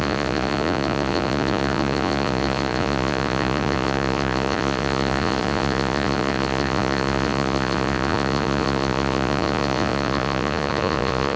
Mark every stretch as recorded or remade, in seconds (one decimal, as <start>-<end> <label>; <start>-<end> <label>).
0.0-11.4 remade